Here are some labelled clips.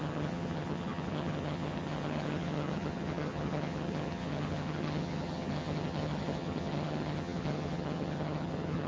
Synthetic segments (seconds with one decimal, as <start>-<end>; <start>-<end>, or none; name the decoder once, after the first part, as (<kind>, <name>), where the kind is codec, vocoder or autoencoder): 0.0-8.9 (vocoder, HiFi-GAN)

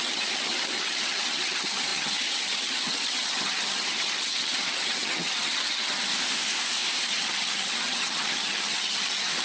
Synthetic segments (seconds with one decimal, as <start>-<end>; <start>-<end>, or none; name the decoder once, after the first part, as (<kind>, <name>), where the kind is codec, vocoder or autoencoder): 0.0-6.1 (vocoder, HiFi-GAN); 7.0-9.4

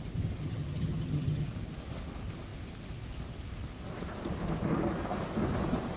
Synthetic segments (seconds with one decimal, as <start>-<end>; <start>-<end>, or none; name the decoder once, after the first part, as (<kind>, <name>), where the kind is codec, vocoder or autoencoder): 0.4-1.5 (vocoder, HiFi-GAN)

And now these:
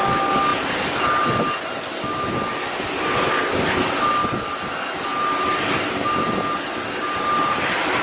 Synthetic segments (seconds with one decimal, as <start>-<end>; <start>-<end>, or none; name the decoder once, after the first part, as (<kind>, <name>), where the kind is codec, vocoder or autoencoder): none

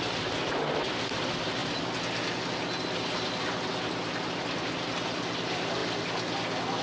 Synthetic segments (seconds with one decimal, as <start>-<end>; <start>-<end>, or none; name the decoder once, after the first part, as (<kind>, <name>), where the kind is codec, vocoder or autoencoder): none